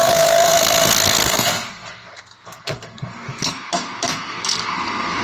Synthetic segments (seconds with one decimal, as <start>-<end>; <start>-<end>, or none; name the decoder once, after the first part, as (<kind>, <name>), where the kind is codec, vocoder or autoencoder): 0.0-5.2 (codec, SNAC)